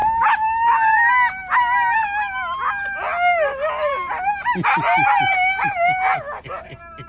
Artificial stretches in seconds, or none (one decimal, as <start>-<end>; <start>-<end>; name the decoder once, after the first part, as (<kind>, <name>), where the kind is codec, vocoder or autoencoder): 0.0-1.1 (autoencoder, DAC-VAE)

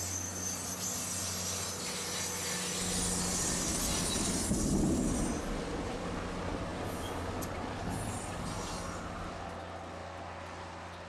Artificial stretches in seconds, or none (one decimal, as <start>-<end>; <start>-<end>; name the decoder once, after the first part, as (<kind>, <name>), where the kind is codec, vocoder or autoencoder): none

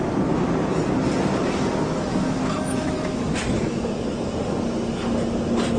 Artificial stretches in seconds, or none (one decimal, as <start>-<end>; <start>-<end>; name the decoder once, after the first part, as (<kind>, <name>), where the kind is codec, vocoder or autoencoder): 2.1-3.2 (autoencoder, DAC-VAE)

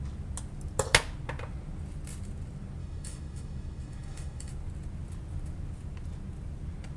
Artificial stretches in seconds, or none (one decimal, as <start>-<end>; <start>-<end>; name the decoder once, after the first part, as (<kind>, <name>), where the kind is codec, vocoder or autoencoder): 2.8-4.5 (autoencoder, DAC-VAE)